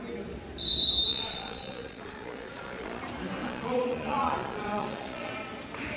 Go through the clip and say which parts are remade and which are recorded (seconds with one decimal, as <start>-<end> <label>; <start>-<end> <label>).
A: 0.0-1.1 recorded; 1.1-3.0 remade; 3.0-3.4 recorded; 3.4-5.3 remade; 5.3-6.0 recorded